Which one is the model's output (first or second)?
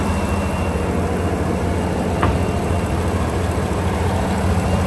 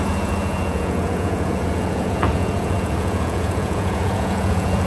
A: second